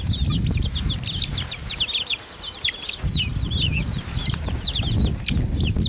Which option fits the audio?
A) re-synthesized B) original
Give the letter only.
B